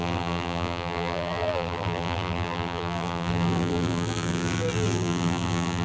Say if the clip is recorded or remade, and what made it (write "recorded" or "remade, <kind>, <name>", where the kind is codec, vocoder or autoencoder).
remade, vocoder, BigVGAN v2